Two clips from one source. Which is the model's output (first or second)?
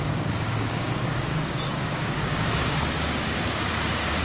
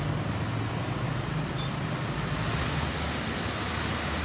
first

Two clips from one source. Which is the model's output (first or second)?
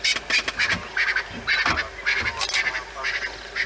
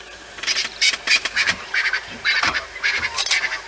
second